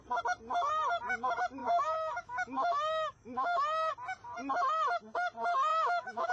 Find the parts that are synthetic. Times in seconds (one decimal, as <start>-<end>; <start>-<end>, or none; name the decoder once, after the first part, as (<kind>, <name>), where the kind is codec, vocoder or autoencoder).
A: 1.6-3.9 (autoencoder, DAC-VAE); 5.7-6.3